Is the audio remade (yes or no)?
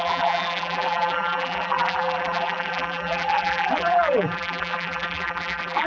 yes